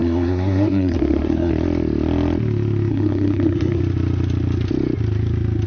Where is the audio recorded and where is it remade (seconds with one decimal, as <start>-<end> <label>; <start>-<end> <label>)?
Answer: 0.0-1.5 remade; 1.5-2.9 recorded; 2.9-3.8 remade; 3.8-5.7 recorded